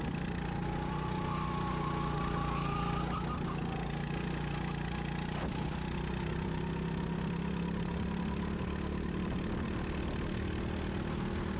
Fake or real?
real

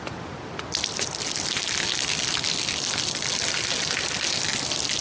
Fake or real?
real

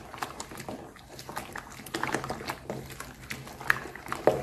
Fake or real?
real